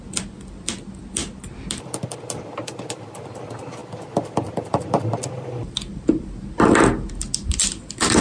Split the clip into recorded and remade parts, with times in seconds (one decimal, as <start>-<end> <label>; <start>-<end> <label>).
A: 0.0-8.2 recorded